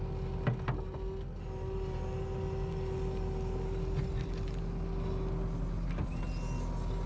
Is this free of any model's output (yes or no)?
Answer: yes